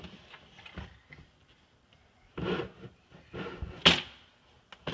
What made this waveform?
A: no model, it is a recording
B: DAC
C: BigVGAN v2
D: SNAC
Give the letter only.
A